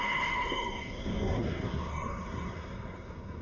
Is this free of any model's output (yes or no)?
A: no